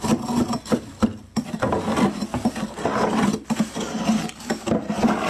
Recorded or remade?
recorded